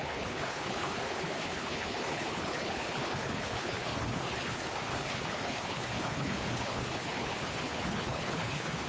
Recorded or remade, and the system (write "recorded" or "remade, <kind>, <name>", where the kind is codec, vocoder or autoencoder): remade, codec, HILCodec